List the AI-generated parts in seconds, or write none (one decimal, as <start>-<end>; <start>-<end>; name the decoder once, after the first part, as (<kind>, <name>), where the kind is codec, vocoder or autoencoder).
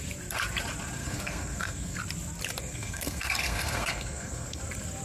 1.0-2.0 (codec, SNAC); 2.6-4.6